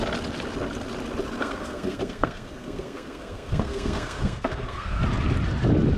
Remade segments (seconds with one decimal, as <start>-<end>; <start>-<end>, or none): 1.4-5.0